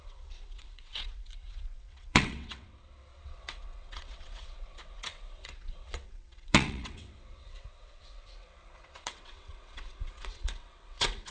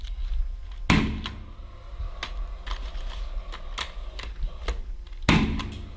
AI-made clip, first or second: first